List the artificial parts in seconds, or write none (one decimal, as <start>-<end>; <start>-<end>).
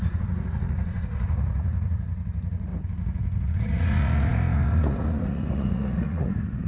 0.0-2.7; 3.6-6.7